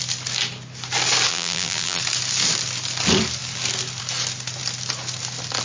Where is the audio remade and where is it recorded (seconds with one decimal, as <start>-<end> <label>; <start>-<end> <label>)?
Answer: 0.0-1.3 recorded; 1.3-2.0 remade; 2.0-5.6 recorded